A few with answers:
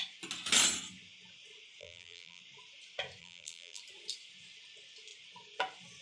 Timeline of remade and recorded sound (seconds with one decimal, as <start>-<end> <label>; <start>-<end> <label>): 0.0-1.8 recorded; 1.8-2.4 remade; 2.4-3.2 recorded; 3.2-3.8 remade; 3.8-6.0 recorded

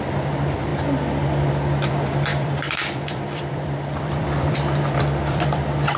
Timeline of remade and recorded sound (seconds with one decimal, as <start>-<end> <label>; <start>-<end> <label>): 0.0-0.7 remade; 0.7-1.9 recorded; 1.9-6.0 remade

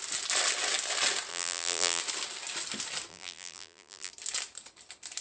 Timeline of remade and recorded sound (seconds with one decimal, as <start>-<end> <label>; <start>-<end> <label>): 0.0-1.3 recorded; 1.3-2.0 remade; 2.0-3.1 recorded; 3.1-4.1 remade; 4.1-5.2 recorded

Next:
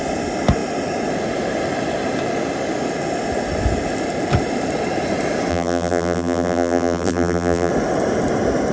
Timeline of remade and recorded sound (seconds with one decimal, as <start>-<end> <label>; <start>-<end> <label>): 0.0-5.5 recorded; 5.5-7.7 remade; 7.7-8.7 recorded